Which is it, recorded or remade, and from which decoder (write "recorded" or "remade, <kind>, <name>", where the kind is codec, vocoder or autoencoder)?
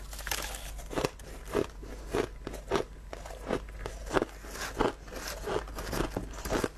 recorded